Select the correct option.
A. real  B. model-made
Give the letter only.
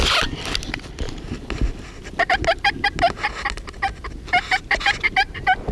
A